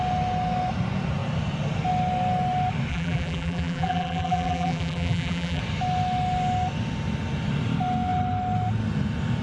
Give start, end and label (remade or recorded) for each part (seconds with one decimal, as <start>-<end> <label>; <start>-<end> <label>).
0.0-2.9 recorded; 2.9-5.6 remade; 5.6-9.4 recorded